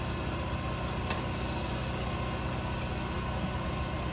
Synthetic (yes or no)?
no